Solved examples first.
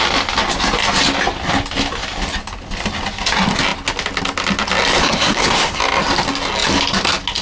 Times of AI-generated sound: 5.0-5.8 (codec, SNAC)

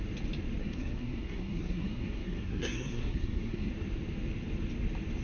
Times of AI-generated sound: 0.6-3.7 (codec, SNAC)

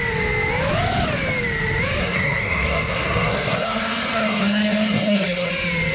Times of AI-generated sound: 2.0-5.5 (codec, SNAC)